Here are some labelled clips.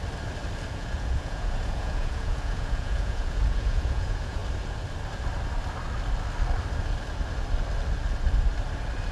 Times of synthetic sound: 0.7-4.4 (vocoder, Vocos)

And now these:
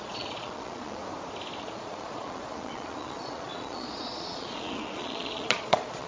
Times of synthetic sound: 0.0-1.0 (vocoder, Vocos); 1.6-6.1

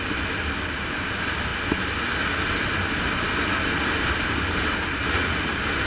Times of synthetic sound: 5.0-5.5 (vocoder, Vocos)

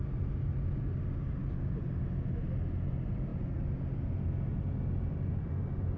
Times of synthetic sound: none

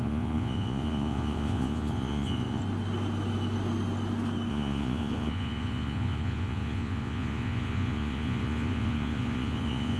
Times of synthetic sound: 0.0-2.6 (vocoder, Vocos); 4.5-10.0

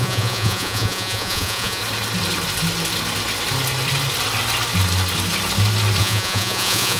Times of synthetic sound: 0.0-1.8 (vocoder, Vocos); 6.0-7.0

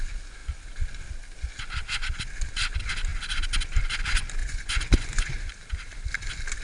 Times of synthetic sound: 4.4-5.5 (vocoder, Vocos)